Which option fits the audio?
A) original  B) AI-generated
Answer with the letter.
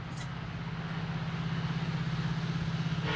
A